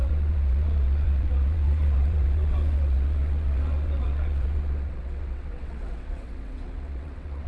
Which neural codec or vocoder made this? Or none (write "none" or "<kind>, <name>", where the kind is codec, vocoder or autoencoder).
vocoder, WaveNeXt